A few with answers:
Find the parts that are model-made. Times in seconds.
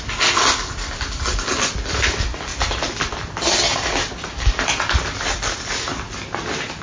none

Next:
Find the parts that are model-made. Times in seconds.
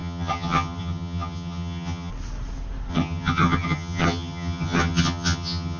0.0-2.1 (vocoder, HiFi-GAN); 2.9-5.8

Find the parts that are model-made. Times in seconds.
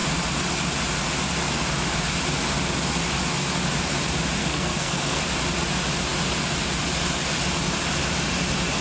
4.4-5.2 (codec, SNAC)